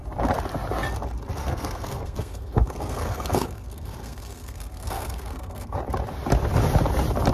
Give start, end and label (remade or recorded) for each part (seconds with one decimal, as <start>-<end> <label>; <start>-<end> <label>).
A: 0.0-1.4 recorded; 1.4-5.8 remade; 5.8-7.3 recorded